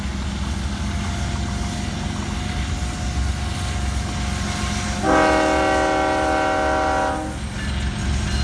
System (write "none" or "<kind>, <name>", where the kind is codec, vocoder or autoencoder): none